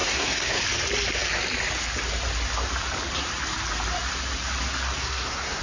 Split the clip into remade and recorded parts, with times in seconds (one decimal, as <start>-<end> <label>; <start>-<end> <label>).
0.0-0.6 remade; 0.6-5.0 recorded; 5.0-5.6 remade